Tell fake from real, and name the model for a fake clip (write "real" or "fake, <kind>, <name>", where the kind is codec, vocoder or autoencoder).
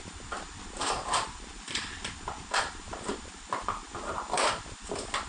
fake, vocoder, BigVGAN v2